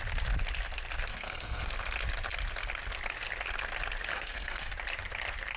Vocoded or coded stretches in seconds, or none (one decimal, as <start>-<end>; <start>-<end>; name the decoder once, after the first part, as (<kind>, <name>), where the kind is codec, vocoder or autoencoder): 1.1-1.7 (codec, SNAC); 4.1-4.7